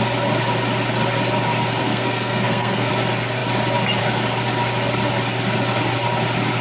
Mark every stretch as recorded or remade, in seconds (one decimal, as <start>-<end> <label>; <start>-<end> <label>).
0.0-1.8 recorded; 1.8-2.9 remade; 2.9-6.6 recorded